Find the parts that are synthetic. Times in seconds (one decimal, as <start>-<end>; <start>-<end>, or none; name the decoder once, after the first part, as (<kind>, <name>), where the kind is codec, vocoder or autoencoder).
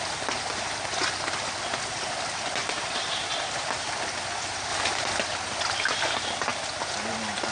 2.6-4.0 (vocoder, BigVGAN v2)